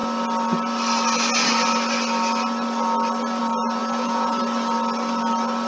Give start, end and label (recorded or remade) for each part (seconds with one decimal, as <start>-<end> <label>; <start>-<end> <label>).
0.0-3.8 recorded; 3.8-4.4 remade; 4.4-5.7 recorded